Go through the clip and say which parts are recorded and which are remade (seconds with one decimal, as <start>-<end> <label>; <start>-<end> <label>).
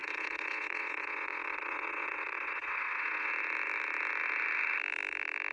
0.0-3.3 remade; 3.3-5.5 recorded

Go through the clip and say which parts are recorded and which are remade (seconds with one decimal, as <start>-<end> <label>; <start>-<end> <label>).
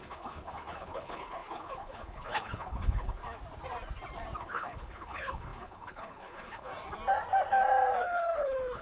0.0-3.2 remade; 3.2-4.4 recorded; 4.4-6.7 remade; 6.7-8.0 recorded; 8.0-8.8 remade